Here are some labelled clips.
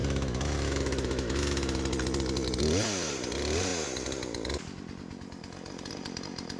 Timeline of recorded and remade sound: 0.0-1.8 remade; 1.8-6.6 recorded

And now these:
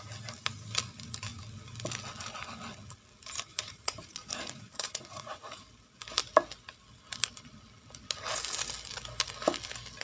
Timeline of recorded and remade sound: 0.0-3.5 recorded; 3.5-5.6 remade; 5.6-10.0 recorded

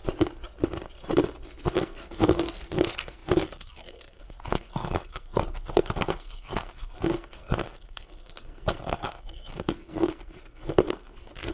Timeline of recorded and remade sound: 0.0-1.7 recorded; 1.7-11.5 remade

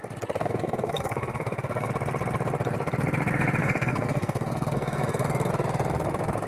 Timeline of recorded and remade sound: 0.0-0.4 recorded; 0.4-1.9 remade; 1.9-3.6 recorded; 3.6-5.5 remade; 5.5-6.5 recorded

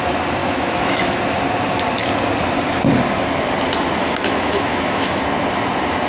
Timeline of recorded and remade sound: 0.0-0.4 recorded; 0.4-1.2 remade; 1.2-4.0 recorded; 4.0-5.2 remade; 5.2-6.1 recorded

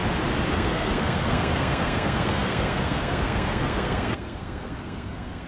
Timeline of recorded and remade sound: 0.0-0.5 recorded; 0.5-5.5 remade

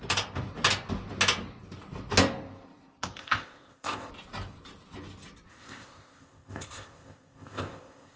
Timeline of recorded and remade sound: 0.0-3.2 recorded; 3.2-4.1 remade; 4.1-5.5 recorded; 5.5-8.2 remade

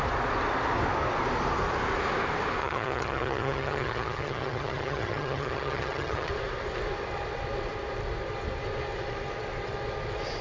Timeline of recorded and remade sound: 0.0-2.6 recorded; 2.6-6.3 remade; 6.3-10.4 recorded